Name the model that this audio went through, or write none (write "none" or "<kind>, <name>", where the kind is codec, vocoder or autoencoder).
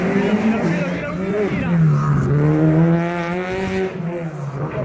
none